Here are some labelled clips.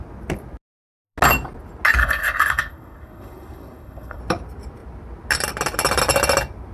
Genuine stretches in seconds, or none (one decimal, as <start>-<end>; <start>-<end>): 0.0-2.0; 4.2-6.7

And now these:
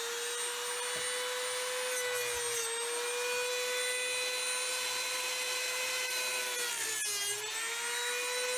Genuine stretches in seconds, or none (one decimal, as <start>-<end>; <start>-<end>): 0.0-4.7; 6.4-8.6

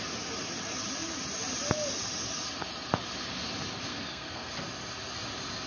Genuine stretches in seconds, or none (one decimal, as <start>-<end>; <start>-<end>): 0.0-3.9; 4.5-5.7

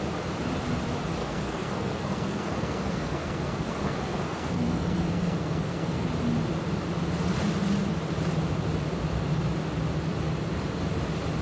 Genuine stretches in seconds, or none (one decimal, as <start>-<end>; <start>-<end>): 0.0-1.2; 6.1-11.4

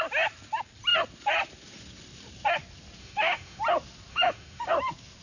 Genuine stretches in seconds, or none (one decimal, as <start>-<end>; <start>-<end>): 0.0-3.0; 3.6-4.1; 4.7-5.2

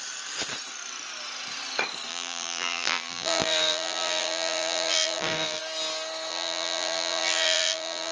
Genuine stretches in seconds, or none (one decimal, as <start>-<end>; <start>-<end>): 0.0-2.1; 5.6-6.3

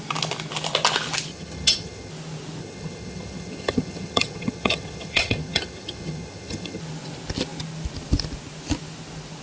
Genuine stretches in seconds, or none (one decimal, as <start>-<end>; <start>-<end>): 0.0-1.3; 2.1-2.6; 6.8-9.4

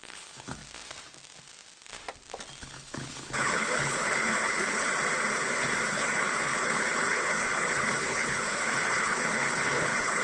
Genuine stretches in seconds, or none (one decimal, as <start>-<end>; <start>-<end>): 0.6-2.6; 4.9-5.9